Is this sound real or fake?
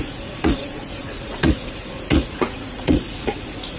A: fake